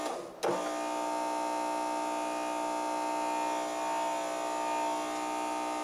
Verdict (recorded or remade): recorded